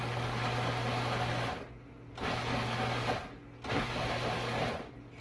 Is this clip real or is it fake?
real